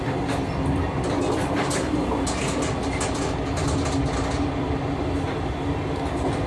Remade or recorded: recorded